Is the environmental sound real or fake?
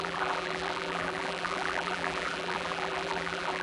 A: fake